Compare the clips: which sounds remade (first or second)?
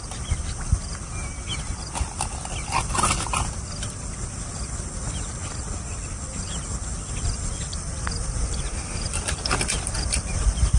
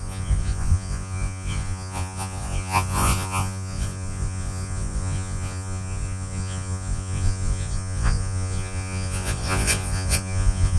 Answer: second